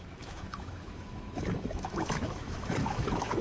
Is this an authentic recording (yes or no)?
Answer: no